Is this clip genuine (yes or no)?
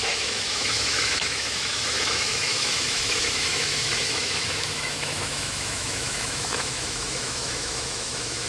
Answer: no